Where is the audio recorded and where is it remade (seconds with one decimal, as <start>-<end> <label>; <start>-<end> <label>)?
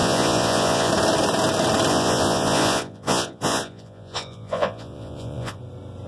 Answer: 0.0-0.9 remade; 0.9-1.9 recorded; 1.9-5.6 remade; 5.6-6.1 recorded